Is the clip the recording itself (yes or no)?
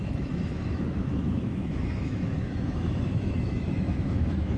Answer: no